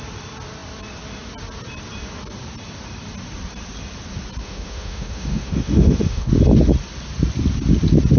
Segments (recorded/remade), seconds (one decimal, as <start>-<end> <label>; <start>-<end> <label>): 0.0-4.4 recorded; 4.4-6.3 remade; 6.3-8.2 recorded